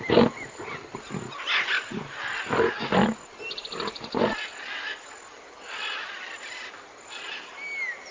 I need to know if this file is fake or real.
real